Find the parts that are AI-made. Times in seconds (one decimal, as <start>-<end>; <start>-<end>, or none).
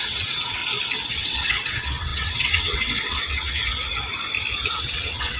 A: 0.0-0.6; 1.1-3.6; 4.7-5.4